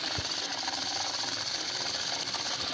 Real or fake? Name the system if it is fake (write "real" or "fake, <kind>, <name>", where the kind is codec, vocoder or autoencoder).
real